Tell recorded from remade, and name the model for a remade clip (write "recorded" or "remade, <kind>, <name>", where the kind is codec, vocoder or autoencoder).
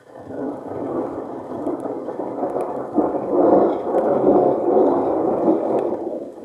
remade, codec, DAC